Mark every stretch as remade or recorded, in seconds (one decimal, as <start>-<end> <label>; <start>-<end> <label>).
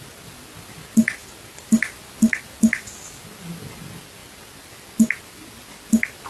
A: 0.0-6.3 recorded